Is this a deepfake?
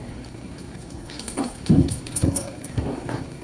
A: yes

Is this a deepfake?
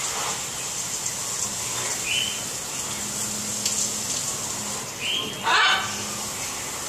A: no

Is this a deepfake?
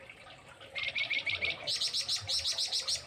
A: no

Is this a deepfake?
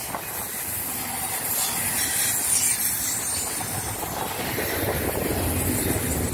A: no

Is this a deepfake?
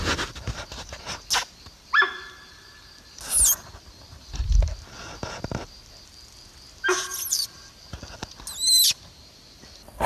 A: no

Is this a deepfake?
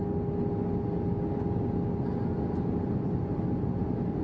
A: no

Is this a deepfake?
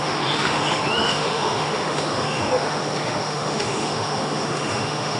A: yes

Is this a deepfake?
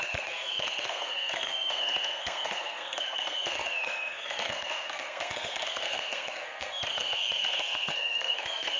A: yes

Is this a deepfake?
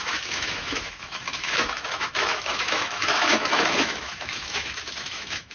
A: yes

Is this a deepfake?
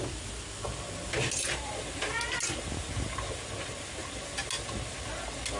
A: no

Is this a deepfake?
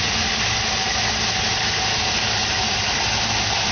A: no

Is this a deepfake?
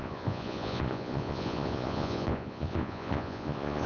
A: yes